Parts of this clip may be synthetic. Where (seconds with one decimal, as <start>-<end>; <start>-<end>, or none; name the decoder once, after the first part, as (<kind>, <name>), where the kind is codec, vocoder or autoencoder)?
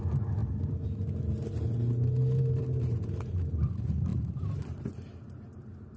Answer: none